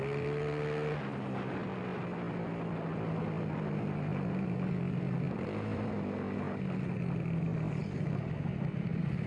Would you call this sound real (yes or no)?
yes